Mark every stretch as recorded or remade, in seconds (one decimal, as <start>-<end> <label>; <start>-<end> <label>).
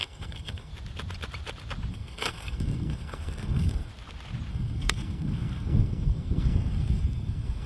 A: 0.0-0.7 remade; 0.7-1.9 recorded; 1.9-3.9 remade; 3.9-4.5 recorded; 4.5-7.7 remade